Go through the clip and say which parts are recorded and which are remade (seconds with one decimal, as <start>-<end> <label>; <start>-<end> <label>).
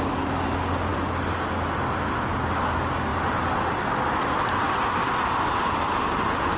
0.0-6.6 recorded